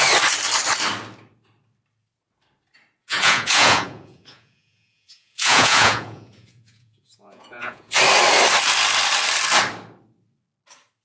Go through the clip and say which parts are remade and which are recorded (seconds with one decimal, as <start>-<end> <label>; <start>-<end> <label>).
0.0-3.0 recorded; 3.0-8.0 remade; 8.0-11.0 recorded